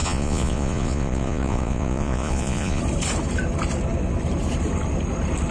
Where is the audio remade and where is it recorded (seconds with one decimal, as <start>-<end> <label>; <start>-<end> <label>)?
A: 0.0-2.8 remade; 2.8-5.5 recorded